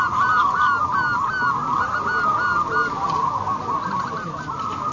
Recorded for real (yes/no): yes